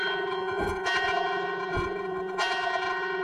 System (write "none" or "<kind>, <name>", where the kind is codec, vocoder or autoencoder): vocoder, Vocos